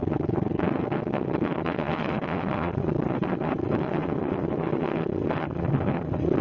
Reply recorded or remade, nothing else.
remade